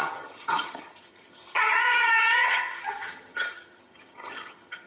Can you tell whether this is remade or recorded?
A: remade